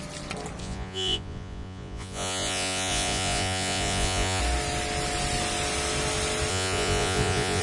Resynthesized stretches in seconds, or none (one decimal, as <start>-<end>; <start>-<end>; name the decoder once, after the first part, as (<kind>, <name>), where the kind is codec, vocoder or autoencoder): 0.6-4.4 (vocoder, Vocos); 6.5-7.6